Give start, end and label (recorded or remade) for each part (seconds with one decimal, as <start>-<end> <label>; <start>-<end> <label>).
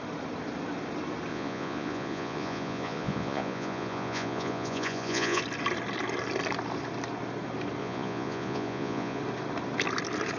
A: 0.0-1.3 recorded; 1.3-5.4 remade; 5.4-7.8 recorded; 7.8-9.2 remade; 9.2-10.4 recorded